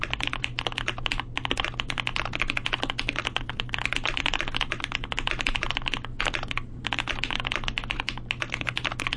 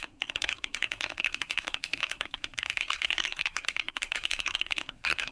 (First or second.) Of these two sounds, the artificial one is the second